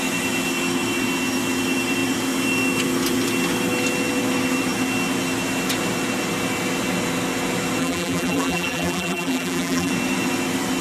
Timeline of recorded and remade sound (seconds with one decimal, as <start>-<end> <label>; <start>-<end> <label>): 0.0-7.8 recorded; 7.8-9.9 remade; 9.9-10.8 recorded